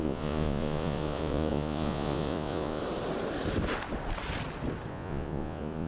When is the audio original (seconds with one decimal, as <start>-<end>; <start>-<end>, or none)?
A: 2.8-4.9